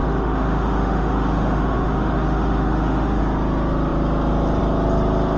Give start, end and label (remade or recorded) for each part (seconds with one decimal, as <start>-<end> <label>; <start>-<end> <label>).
0.0-3.2 remade; 3.2-5.4 recorded